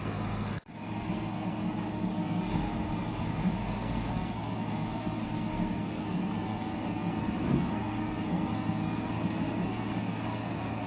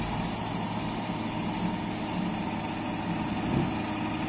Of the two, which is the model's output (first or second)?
first